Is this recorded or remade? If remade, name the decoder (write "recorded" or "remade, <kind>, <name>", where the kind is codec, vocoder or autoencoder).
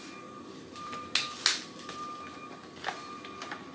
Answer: recorded